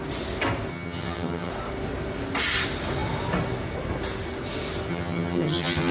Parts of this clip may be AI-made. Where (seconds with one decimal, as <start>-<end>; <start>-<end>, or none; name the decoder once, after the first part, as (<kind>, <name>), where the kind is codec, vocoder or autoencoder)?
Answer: 0.7-1.5 (vocoder, HiFi-GAN); 4.9-5.9